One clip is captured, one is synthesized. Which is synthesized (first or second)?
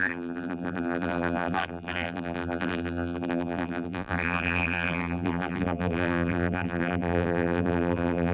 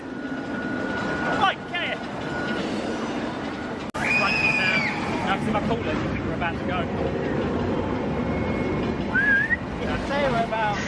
first